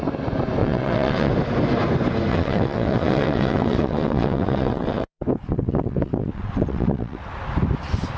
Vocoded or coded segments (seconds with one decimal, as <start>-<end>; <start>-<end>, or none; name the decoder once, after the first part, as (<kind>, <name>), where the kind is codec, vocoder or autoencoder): 0.6-1.3 (vocoder, WaveNeXt); 2.3-7.2